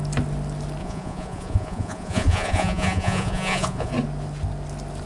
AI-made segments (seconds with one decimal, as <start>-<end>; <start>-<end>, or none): 0.8-3.9